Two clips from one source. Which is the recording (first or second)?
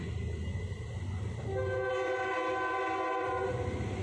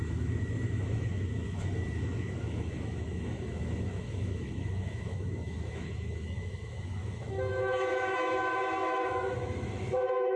first